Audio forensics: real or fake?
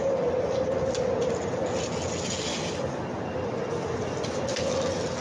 real